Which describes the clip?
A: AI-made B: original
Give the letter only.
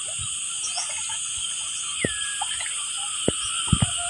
B